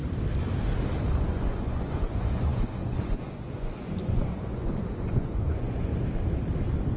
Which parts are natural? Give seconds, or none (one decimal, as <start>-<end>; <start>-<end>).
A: 0.0-1.2; 5.9-7.0